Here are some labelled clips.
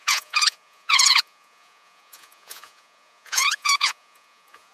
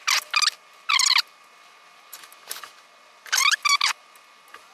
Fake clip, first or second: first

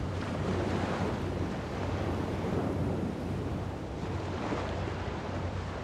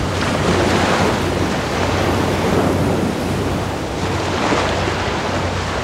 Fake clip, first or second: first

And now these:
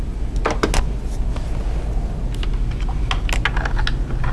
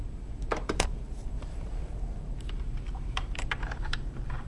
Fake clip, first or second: second